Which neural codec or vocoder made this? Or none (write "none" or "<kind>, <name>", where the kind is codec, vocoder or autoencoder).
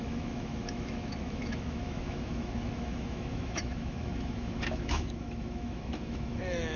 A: autoencoder, DAC-VAE